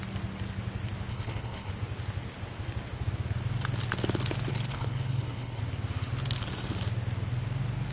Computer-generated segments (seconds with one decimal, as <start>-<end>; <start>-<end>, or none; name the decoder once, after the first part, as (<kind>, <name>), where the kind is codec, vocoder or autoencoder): 1.1-1.7 (codec, HILCodec); 4.5-5.6